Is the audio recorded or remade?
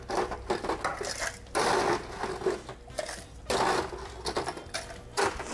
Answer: recorded